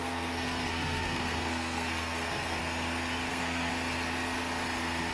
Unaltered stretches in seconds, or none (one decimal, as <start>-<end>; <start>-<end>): 2.6-3.3; 3.7-5.1